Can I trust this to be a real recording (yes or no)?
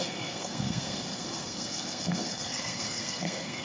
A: no